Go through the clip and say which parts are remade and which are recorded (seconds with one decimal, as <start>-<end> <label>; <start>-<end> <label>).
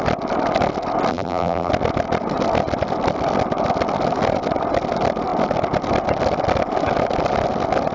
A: 0.0-1.1 recorded; 1.1-1.7 remade; 1.7-7.9 recorded